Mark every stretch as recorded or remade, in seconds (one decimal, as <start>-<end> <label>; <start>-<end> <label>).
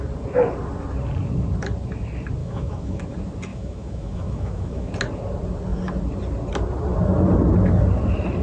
0.0-2.4 recorded; 2.4-3.0 remade; 3.0-3.5 recorded; 3.5-4.9 remade; 4.9-8.4 recorded